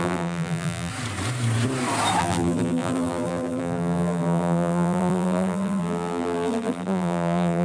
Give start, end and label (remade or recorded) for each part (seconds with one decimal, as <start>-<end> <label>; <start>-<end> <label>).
0.0-0.9 remade; 0.9-2.2 recorded; 2.2-7.6 remade